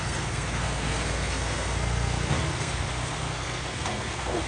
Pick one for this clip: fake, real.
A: fake